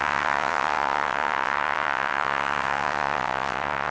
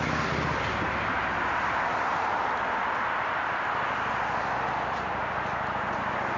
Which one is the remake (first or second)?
first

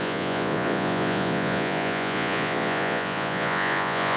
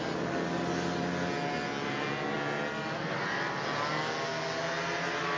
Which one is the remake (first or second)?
first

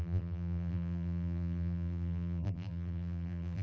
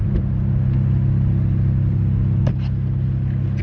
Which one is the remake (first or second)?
first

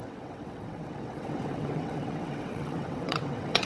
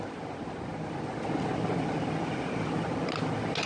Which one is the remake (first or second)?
first